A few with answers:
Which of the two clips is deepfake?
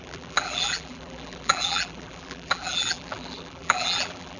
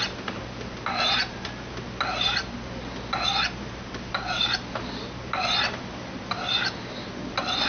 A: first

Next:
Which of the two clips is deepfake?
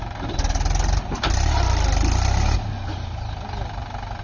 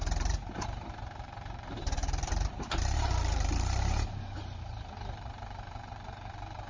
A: second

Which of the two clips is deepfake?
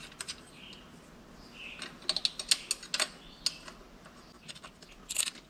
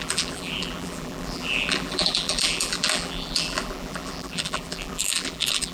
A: second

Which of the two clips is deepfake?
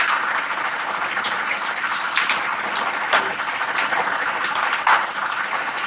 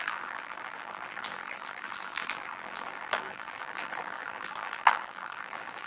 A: second